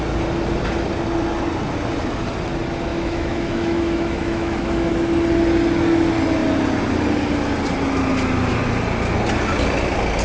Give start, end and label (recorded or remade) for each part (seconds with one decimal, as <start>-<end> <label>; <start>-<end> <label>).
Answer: 0.0-2.9 recorded; 2.9-4.9 remade; 4.9-10.2 recorded